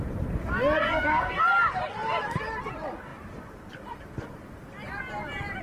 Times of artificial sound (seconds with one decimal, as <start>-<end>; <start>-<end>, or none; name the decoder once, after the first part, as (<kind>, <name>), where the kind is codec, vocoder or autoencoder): 0.8-1.4 (codec, SNAC)

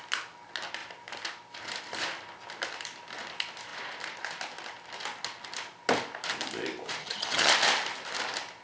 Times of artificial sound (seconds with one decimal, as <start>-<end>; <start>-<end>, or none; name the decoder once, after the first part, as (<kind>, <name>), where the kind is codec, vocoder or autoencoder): 7.0-7.5 (vocoder, HiFi-GAN)

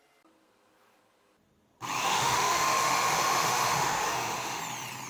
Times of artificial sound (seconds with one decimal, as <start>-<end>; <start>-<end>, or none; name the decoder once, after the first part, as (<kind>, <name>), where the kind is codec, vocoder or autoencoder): 2.0-4.6 (autoencoder, DAC-VAE)

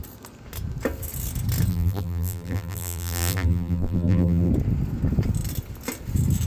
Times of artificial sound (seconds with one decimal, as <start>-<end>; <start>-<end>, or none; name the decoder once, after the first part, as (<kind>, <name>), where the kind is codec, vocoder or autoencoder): 1.7-4.5 (vocoder, BigVGAN v2)

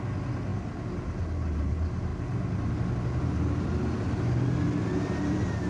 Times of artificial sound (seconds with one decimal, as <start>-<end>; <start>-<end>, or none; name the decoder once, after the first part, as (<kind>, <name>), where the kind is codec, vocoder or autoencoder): 0.5-1.2 (vocoder, BigVGAN v2)

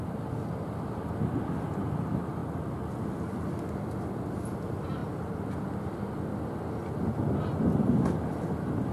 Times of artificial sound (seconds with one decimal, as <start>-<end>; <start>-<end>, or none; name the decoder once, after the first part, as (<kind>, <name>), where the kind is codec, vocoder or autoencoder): none

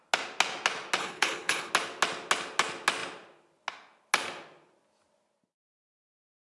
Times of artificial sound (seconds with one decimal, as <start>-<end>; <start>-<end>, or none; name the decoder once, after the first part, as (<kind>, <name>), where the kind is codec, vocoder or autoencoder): 1.0-1.7 (codec, HILCodec)

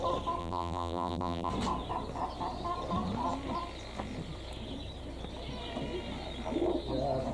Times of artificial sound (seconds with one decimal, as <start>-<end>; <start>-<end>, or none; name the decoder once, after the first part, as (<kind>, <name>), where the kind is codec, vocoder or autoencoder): 0.4-1.5 (vocoder, BigVGAN v2)